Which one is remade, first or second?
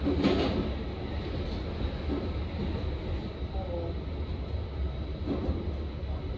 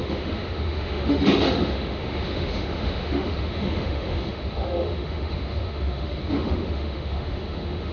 second